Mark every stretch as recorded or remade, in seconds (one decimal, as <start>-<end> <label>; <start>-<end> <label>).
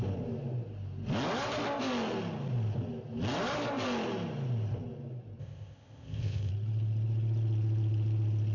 0.0-5.4 recorded; 5.4-6.5 remade; 6.5-8.5 recorded